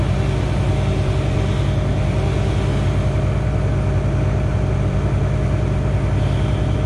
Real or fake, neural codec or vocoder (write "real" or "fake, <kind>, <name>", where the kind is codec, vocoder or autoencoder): real